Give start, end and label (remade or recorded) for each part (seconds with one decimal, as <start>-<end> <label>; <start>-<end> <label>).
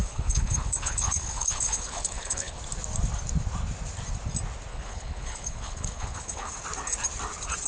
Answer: 0.0-2.6 remade; 2.6-4.7 recorded; 4.7-6.5 remade; 6.5-7.7 recorded